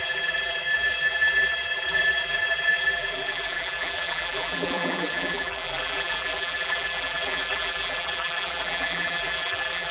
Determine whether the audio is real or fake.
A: fake